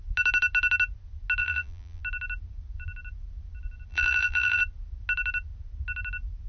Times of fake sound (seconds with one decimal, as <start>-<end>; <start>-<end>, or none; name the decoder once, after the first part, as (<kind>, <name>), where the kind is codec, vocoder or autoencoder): 1.4-2.0 (vocoder, BigVGAN v2); 3.9-4.6